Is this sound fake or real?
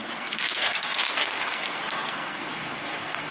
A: fake